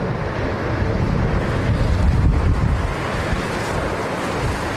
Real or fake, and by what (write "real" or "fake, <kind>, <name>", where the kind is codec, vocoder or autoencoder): real